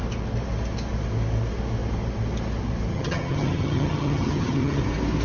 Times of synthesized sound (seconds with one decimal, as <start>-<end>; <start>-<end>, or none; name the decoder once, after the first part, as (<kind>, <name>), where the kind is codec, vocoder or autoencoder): 2.9-4.8 (vocoder, HiFi-GAN)